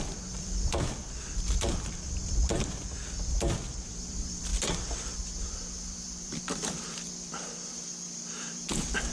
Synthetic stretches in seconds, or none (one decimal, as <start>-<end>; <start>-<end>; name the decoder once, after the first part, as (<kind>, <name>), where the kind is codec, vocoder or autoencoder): 0.0-7.7 (vocoder, BigVGAN v2); 8.3-9.1